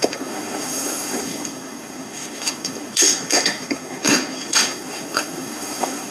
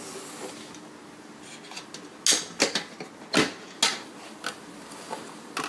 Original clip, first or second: second